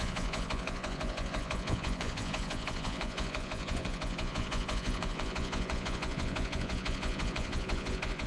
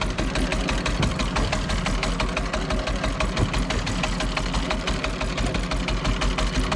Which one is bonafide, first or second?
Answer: second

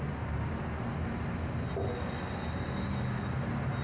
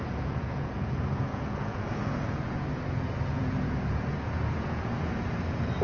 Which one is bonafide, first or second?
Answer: first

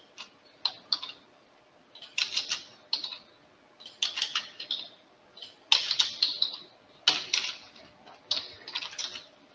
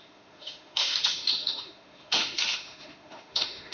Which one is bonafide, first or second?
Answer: first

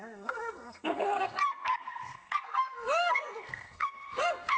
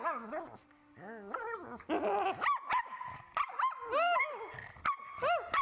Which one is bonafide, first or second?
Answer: second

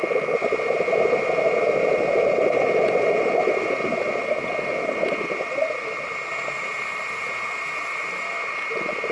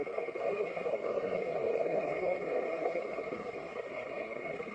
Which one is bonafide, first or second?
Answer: first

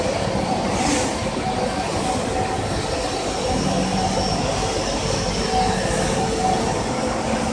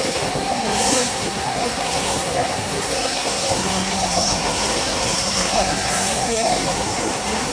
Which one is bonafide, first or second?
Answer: first